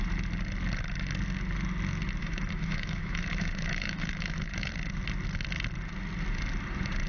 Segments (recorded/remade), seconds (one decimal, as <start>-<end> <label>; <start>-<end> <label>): 0.0-2.2 recorded; 2.2-4.7 remade; 4.7-7.1 recorded